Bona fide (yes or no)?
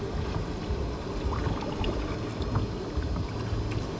yes